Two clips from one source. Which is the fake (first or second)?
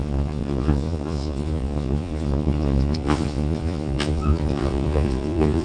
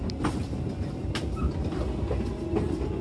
first